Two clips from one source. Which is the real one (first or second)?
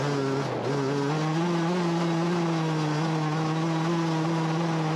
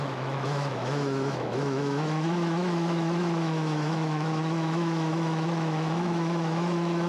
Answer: first